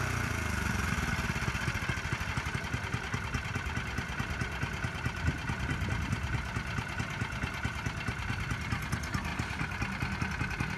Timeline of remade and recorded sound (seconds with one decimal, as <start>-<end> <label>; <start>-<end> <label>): 0.0-10.8 recorded